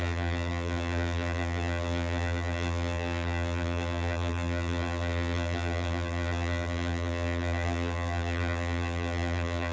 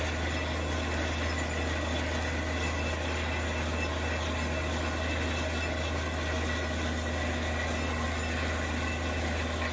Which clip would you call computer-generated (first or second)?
first